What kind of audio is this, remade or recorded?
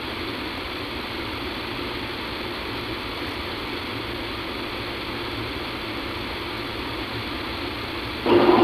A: recorded